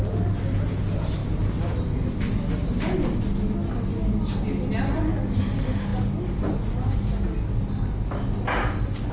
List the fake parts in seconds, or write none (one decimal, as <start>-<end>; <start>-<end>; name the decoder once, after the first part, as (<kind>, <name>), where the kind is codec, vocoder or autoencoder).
none